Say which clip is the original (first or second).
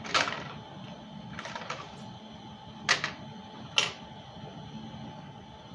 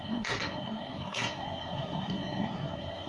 first